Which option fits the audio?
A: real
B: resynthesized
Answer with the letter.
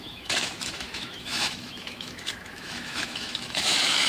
B